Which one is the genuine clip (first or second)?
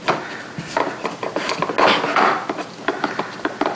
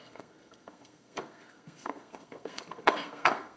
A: first